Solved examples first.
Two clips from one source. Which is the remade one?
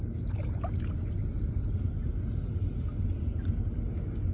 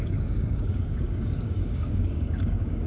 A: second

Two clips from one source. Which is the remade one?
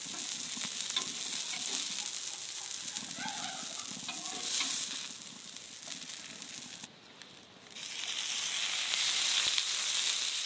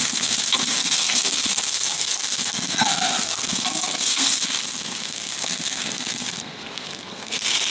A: second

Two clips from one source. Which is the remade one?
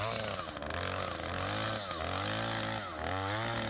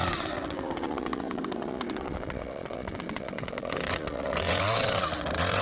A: second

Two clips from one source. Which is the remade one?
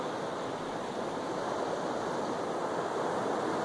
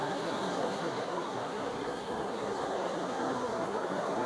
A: second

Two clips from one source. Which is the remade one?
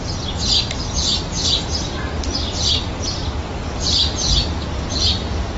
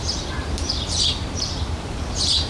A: second